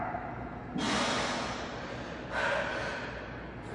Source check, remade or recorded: recorded